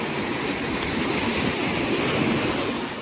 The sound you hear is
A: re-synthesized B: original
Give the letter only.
B